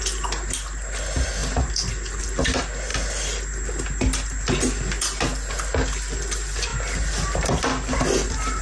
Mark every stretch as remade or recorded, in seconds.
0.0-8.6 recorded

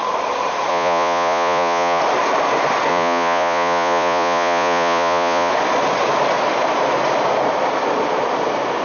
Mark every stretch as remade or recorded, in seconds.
0.0-0.7 recorded; 0.7-2.0 remade; 2.0-2.9 recorded; 2.9-5.5 remade; 5.5-8.8 recorded

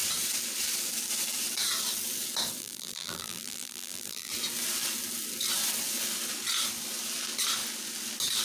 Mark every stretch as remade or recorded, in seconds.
0.0-2.6 recorded; 2.6-4.3 remade; 4.3-8.4 recorded

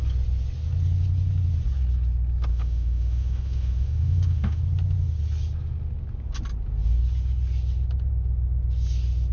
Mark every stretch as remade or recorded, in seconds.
0.0-2.5 recorded; 2.5-4.6 remade; 4.6-9.3 recorded

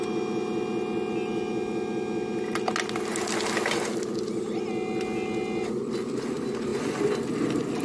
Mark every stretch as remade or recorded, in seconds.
0.0-7.8 recorded

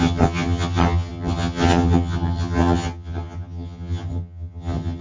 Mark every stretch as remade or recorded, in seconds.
0.0-5.0 remade